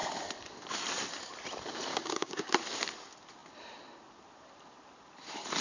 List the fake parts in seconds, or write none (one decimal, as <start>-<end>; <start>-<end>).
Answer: 1.9-2.5